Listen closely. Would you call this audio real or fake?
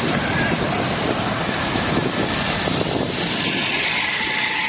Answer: real